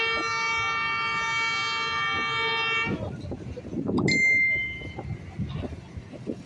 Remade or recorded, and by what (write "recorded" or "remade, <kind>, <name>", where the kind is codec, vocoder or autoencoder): recorded